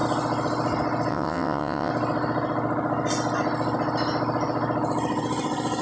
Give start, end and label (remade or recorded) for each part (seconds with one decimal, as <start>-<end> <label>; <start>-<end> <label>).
0.0-1.1 recorded; 1.1-1.9 remade; 1.9-5.8 recorded